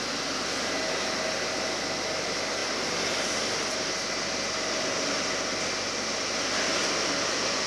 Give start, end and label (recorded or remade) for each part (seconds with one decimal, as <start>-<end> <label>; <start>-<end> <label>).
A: 0.0-7.7 recorded